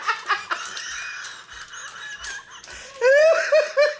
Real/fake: real